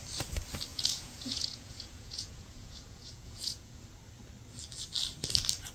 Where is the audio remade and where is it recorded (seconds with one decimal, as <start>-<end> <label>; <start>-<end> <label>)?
0.0-0.7 recorded; 0.7-3.8 remade; 3.8-5.7 recorded